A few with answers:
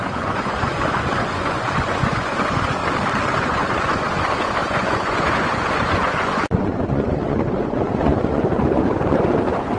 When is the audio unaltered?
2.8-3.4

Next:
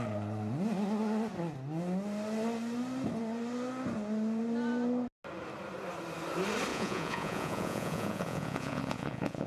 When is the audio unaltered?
0.0-6.7

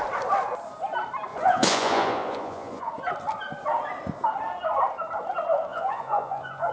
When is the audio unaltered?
0.0-1.3; 2.9-5.7